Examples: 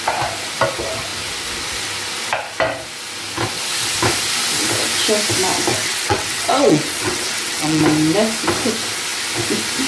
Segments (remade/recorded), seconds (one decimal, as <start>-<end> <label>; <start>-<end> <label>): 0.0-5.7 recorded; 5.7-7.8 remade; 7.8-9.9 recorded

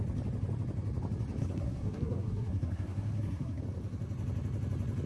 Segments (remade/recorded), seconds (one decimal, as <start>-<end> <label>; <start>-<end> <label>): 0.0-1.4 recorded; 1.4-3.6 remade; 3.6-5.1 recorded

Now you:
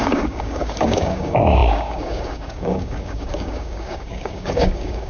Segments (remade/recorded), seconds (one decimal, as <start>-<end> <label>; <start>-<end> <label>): 0.0-5.1 remade